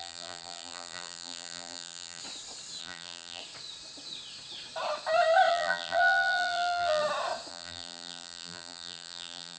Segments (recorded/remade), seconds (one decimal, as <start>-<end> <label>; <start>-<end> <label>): 0.0-2.2 remade; 2.2-2.8 recorded; 2.8-3.4 remade; 3.4-5.5 recorded; 5.5-7.0 remade; 7.0-7.5 recorded; 7.5-9.6 remade

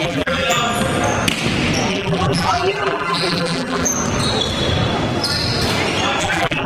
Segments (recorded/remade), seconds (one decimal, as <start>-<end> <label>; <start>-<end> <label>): 0.0-0.6 remade; 0.6-1.9 recorded; 1.9-3.9 remade; 3.9-6.2 recorded; 6.2-6.7 remade